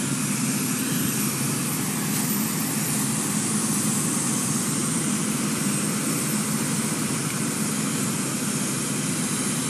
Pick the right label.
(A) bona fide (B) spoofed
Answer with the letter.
A